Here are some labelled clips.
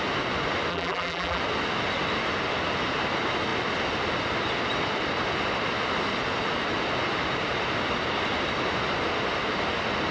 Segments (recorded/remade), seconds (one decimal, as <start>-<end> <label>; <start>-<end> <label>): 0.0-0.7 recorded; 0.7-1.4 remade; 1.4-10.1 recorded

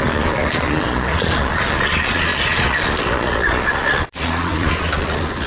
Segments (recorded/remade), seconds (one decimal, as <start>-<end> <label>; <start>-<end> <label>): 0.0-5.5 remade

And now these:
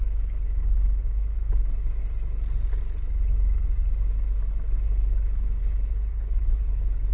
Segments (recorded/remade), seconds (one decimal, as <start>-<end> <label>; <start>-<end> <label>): 0.0-2.0 remade; 2.0-5.6 recorded; 5.6-7.1 remade